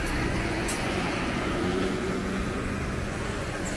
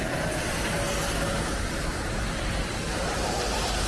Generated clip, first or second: first